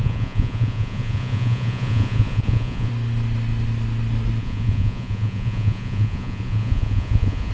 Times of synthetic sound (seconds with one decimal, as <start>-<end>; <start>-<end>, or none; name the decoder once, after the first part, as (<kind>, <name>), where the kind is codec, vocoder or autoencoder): 0.0-2.9 (vocoder, Vocos); 4.4-7.5